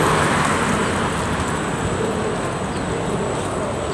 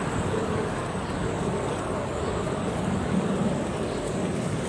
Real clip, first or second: first